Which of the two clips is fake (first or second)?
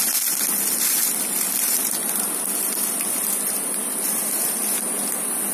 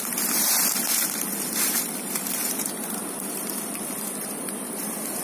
second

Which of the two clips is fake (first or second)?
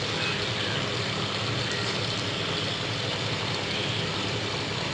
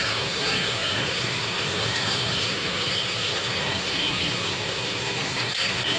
second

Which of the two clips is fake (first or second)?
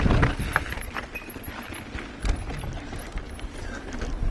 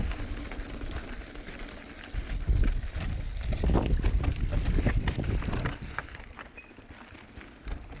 second